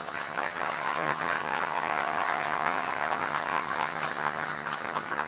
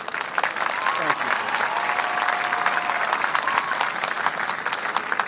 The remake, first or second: first